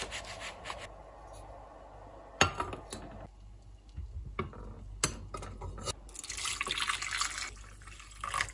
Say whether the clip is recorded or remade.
recorded